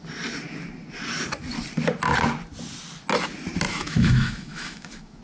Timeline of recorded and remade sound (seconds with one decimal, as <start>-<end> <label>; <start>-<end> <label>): 0.0-3.7 recorded; 3.7-5.2 remade